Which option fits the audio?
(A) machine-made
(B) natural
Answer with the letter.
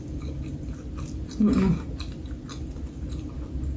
B